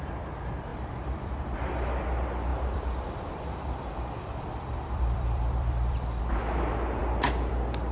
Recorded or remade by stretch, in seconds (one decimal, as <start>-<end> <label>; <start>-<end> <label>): 0.0-0.7 recorded; 0.7-1.9 remade; 1.9-2.5 recorded; 2.5-6.2 remade; 6.2-7.9 recorded